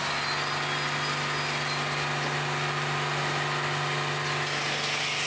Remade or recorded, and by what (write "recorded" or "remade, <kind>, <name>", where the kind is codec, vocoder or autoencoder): recorded